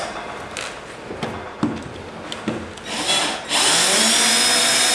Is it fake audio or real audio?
real